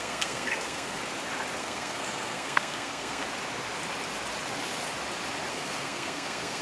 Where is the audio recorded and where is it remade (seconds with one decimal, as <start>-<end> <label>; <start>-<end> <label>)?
0.0-1.0 remade; 1.0-1.6 recorded; 1.6-3.2 remade; 3.2-5.5 recorded; 5.5-6.6 remade